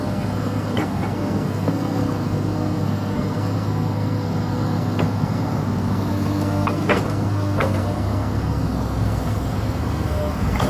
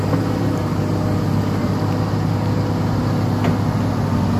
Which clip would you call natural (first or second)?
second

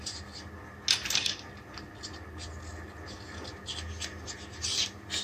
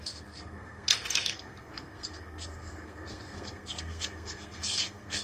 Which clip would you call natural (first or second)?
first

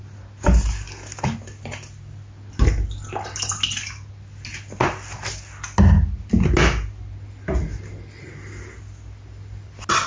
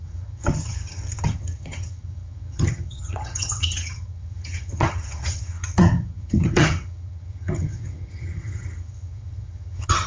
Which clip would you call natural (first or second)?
first